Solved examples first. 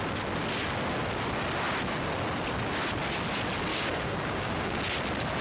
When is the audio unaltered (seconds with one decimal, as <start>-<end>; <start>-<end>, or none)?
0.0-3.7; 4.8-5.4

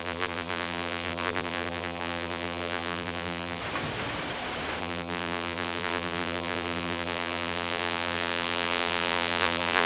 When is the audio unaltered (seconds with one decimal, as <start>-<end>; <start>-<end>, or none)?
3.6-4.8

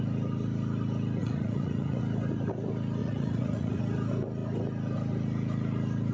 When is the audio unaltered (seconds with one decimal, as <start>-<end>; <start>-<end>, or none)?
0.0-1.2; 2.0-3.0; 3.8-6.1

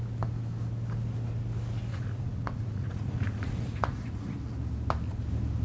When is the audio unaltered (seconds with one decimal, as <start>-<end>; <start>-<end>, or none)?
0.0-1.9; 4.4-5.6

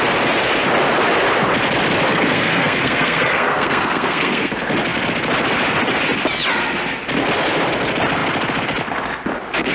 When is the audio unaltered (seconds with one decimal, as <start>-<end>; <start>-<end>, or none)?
0.0-2.1; 4.5-9.7

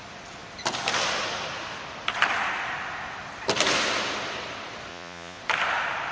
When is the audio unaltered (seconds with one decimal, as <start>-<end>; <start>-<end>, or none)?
0.0-4.9; 5.4-6.1

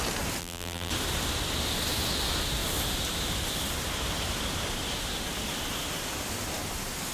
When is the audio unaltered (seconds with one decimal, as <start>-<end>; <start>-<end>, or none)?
0.0-0.4; 0.9-7.1

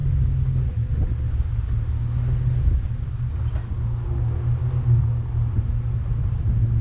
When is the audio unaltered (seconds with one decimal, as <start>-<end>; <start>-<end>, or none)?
0.0-6.8